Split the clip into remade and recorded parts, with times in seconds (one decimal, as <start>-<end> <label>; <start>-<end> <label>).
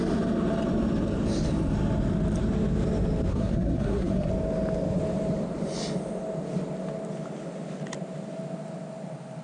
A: 0.0-3.3 recorded; 3.3-4.3 remade; 4.3-9.4 recorded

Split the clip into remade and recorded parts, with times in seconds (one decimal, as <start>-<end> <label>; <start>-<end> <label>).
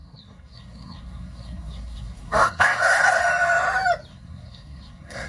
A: 0.0-3.2 remade; 3.2-4.1 recorded; 4.1-5.3 remade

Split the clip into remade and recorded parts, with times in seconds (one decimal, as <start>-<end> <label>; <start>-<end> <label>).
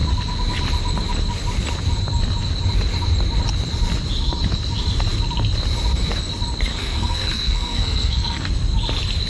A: 0.0-6.7 recorded; 6.7-8.5 remade; 8.5-9.3 recorded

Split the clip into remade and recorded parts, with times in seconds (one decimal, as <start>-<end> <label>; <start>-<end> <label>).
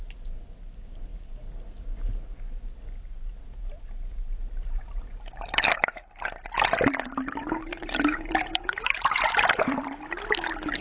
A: 0.0-7.7 recorded; 7.7-9.2 remade; 9.2-10.8 recorded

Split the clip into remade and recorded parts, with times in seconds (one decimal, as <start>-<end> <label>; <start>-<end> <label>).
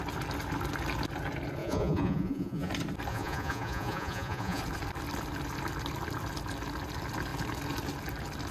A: 0.0-1.6 recorded; 1.6-2.7 remade; 2.7-3.1 recorded; 3.1-4.6 remade; 4.6-8.5 recorded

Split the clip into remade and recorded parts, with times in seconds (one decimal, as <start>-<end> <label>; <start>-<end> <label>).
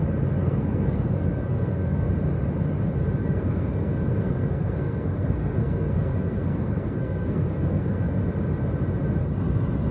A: 0.0-0.4 recorded; 0.4-2.1 remade; 2.1-3.2 recorded; 3.2-8.2 remade; 8.2-9.9 recorded